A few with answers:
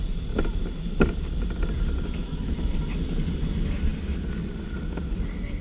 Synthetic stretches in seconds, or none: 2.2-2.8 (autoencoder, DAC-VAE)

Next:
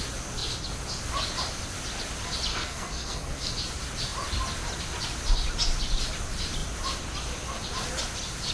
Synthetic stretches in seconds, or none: 2.5-3.5 (codec, SNAC)

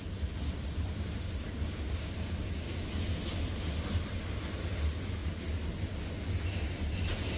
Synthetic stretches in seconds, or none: 1.4-2.7 (codec, DAC)